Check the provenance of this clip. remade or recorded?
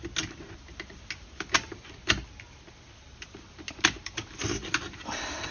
recorded